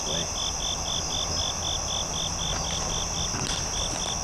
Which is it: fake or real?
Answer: real